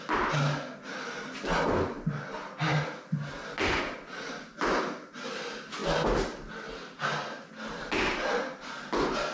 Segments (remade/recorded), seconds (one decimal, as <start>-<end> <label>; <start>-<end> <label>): 0.0-9.3 recorded